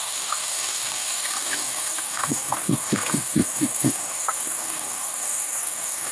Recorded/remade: remade